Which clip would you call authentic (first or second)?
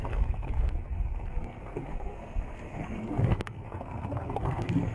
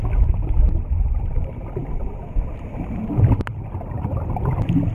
second